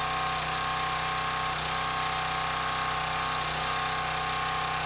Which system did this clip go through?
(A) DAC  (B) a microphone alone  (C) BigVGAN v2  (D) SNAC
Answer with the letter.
B